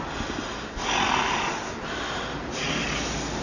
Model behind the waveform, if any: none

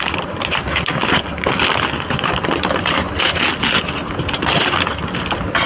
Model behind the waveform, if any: none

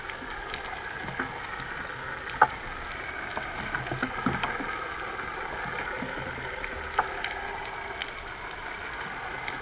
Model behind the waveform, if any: none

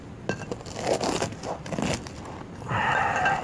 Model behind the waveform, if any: none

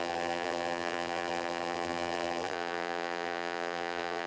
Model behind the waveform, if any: vocoder, BigVGAN v2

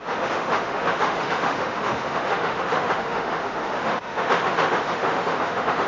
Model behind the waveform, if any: autoencoder, DAC-VAE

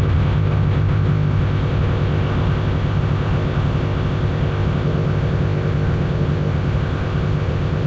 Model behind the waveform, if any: codec, ZipCodec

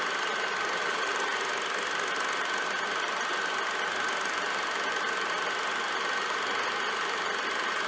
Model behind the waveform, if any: none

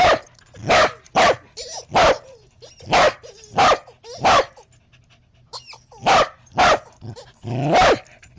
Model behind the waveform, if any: none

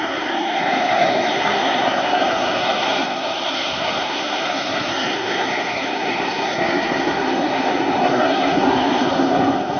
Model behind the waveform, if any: codec, SNAC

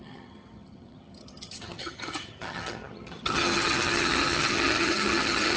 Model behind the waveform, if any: vocoder, HiFi-GAN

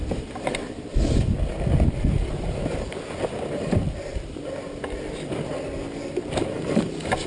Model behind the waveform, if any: none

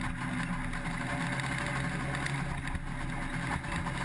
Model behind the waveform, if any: none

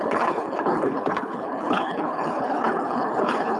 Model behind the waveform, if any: codec, HILCodec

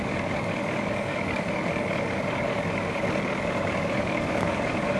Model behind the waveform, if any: codec, DAC